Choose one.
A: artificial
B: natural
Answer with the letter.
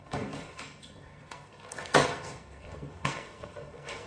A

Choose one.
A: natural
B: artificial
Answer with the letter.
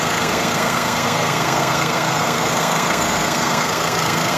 B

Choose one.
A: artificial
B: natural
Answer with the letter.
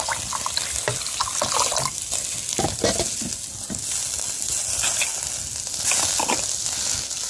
B